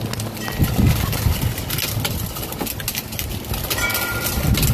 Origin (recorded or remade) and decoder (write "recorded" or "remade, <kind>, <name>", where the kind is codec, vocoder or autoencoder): recorded